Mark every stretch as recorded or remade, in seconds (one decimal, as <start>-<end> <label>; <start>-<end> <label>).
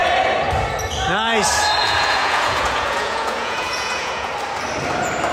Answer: 0.0-1.8 recorded; 1.8-4.3 remade; 4.3-5.3 recorded